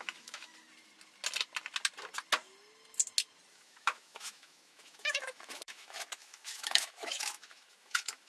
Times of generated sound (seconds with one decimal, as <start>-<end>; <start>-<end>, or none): 0.0-0.5; 3.5-8.3